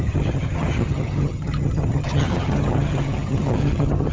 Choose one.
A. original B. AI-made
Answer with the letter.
B